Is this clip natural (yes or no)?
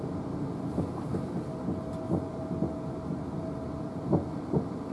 yes